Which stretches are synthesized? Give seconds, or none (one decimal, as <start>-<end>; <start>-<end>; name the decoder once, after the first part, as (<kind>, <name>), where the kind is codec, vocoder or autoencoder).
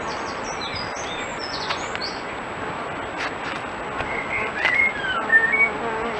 1.3-2.4 (vocoder, Vocos)